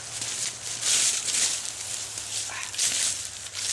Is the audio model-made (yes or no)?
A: no